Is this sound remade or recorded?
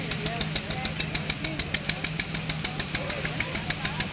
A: recorded